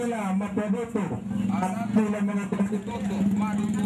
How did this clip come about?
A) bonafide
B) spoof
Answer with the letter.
A